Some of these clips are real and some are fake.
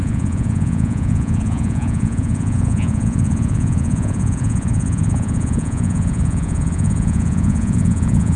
fake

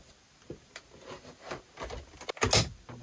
real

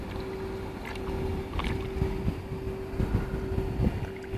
real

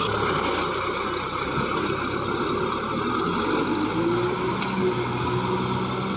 real